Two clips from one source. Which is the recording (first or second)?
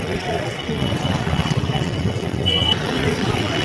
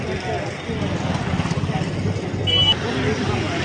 second